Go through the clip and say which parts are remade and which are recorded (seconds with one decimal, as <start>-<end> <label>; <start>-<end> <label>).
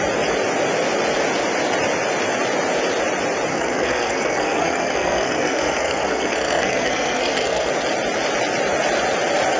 0.0-3.5 recorded; 3.5-7.7 remade; 7.7-9.6 recorded